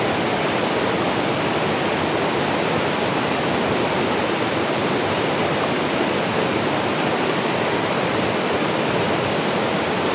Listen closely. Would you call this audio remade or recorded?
recorded